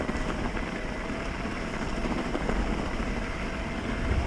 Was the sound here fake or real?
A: real